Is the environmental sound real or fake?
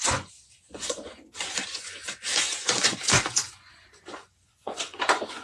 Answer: fake